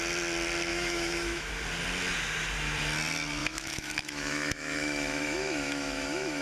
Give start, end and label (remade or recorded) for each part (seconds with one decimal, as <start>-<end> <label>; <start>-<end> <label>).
0.0-0.7 recorded; 0.7-1.5 remade; 1.5-3.4 recorded; 3.4-6.4 remade